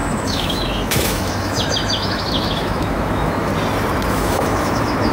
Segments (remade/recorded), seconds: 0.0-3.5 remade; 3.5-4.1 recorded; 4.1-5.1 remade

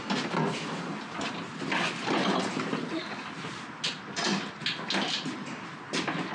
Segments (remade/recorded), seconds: 0.0-6.3 recorded

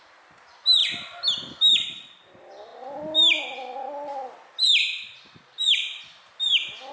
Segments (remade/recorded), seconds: 0.0-6.9 recorded